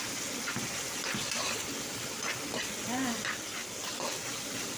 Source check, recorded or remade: recorded